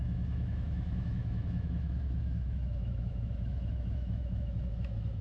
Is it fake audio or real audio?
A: fake